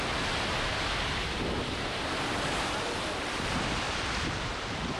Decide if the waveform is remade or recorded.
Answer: recorded